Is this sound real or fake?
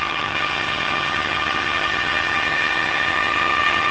fake